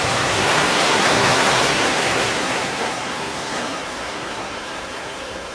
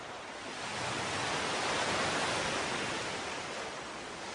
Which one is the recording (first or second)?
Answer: second